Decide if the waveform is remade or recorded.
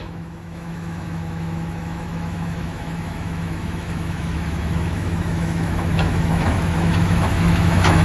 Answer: remade